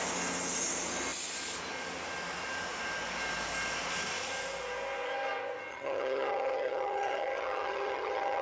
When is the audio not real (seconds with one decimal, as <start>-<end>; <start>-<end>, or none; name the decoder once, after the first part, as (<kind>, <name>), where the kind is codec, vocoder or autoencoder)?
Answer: 5.7-8.4 (vocoder, HiFi-GAN)